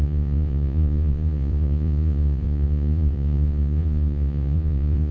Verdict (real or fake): fake